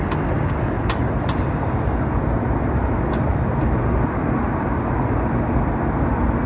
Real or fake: real